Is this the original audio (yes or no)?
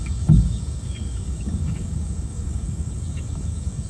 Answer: no